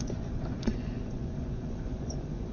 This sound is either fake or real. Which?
fake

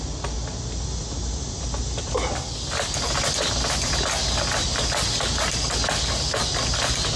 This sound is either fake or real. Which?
real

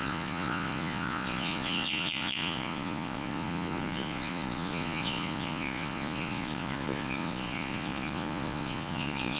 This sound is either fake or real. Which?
fake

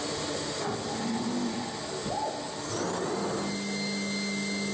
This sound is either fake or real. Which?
real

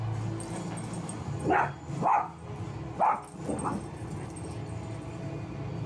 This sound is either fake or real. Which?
real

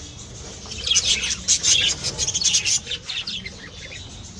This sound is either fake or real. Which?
real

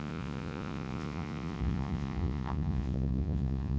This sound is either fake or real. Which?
fake